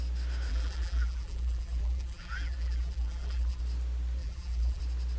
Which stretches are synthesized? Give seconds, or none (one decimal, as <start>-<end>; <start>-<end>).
0.5-3.6; 4.2-4.8